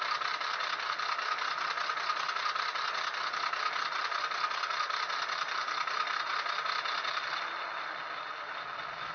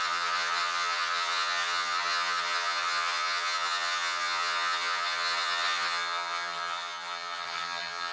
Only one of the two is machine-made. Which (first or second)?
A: second